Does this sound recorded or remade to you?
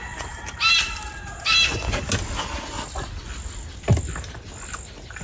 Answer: recorded